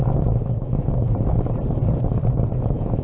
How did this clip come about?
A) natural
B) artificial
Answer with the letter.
A